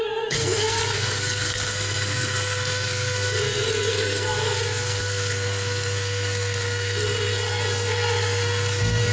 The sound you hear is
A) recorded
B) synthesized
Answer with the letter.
B